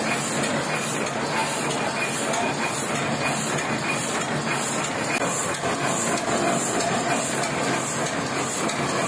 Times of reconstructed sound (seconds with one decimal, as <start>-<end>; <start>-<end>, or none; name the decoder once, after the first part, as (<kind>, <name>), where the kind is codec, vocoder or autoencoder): none